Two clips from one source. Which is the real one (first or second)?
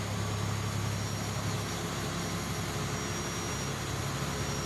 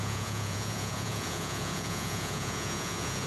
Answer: first